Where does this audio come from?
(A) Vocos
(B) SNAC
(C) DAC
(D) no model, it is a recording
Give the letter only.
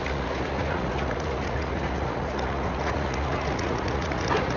A